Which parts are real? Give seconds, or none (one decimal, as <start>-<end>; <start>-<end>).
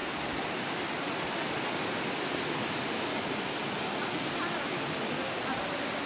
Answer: 0.0-6.1